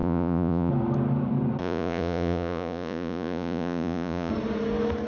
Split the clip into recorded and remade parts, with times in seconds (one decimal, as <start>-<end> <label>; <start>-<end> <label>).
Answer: 0.0-0.7 remade; 0.7-1.6 recorded; 1.6-4.3 remade; 4.3-5.1 recorded